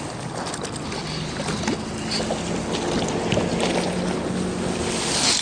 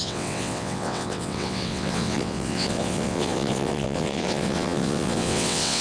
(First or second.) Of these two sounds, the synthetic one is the second